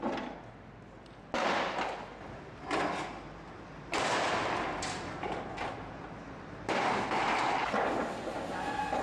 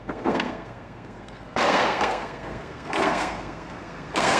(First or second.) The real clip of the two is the first